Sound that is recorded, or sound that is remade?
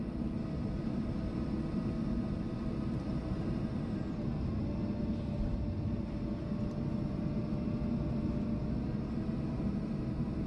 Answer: recorded